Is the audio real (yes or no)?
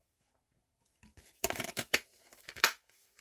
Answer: no